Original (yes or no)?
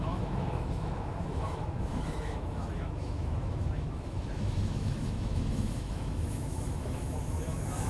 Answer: no